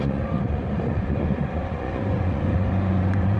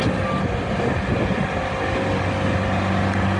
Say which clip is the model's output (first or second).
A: first